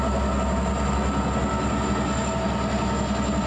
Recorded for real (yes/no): yes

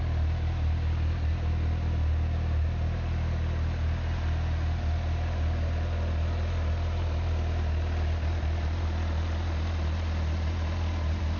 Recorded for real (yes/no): yes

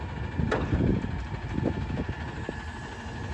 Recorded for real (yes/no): yes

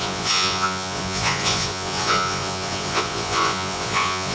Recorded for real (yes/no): no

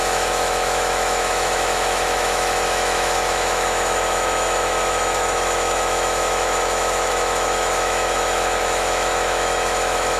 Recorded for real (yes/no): no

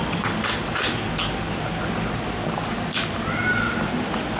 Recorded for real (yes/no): yes